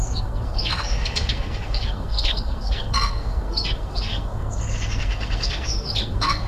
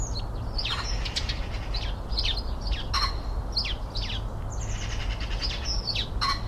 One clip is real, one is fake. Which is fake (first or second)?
first